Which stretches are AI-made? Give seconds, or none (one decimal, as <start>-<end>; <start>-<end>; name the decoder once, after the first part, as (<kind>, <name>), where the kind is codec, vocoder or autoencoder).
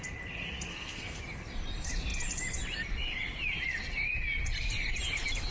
0.7-1.2 (codec, SNAC)